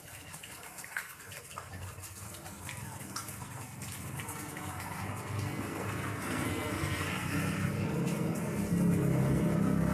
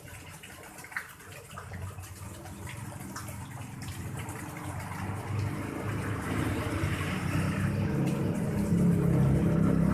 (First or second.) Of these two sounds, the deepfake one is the first